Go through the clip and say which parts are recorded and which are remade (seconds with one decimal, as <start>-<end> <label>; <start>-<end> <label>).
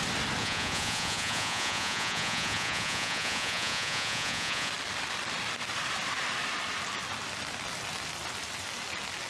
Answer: 0.0-0.4 recorded; 0.4-4.7 remade; 4.7-9.3 recorded